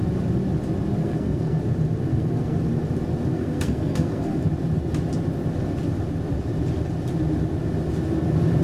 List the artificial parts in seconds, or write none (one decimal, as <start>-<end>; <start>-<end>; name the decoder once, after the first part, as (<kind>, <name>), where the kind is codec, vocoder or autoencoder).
1.0-1.6 (codec, SNAC); 2.1-2.6; 3.3-4.4